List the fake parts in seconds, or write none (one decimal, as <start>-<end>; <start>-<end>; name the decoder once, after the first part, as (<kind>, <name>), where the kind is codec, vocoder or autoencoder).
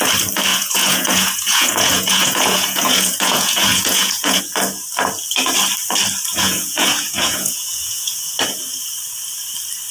0.5-4.4 (vocoder, Vocos); 6.3-8.3